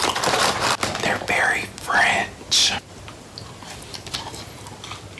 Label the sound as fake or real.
real